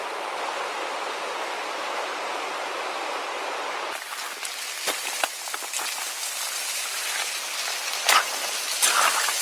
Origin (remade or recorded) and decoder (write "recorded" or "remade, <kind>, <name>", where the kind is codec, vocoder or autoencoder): recorded